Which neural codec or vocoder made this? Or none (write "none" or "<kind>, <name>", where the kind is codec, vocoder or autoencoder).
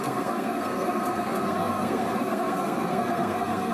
codec, SNAC